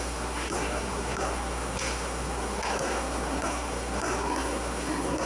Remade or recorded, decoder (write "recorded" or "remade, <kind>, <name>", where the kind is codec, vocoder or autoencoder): remade, codec, SNAC